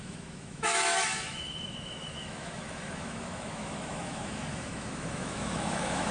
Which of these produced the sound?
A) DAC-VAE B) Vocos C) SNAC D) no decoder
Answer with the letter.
A